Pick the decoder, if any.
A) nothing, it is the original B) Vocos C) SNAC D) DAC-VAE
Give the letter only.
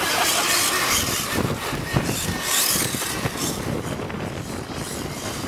A